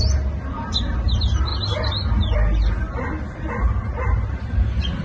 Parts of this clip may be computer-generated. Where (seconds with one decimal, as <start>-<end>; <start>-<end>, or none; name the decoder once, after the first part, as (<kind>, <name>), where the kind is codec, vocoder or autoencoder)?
none